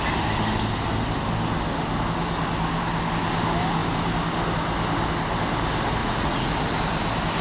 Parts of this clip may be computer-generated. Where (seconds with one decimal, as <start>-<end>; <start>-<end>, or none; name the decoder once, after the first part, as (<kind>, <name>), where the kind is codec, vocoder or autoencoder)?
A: 6.0-6.5 (vocoder, Vocos)